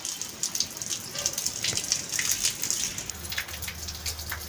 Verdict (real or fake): real